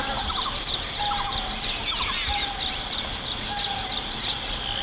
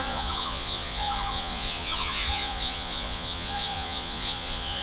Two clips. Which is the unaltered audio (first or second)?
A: first